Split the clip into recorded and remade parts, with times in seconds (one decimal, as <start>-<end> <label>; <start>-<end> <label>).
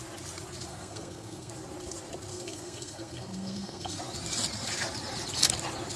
0.0-0.7 recorded; 0.7-1.5 remade; 1.5-2.3 recorded; 2.3-4.0 remade; 4.0-6.0 recorded